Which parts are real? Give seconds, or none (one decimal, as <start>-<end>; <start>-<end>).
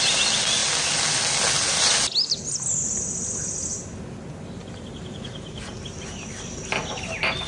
0.0-7.5